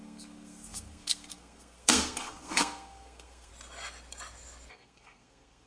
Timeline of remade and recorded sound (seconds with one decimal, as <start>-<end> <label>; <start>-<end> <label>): 0.0-3.5 remade; 3.5-4.7 recorded; 4.7-5.7 remade